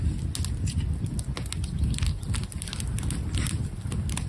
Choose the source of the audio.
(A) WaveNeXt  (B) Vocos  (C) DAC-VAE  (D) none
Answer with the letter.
D